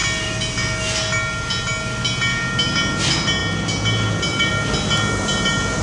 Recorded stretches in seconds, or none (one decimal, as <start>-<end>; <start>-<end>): 0.0-5.8